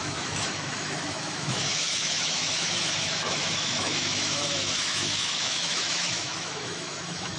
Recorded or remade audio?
remade